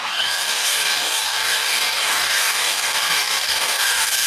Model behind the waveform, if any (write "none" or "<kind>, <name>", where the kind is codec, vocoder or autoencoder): codec, DAC